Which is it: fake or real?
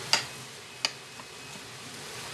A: real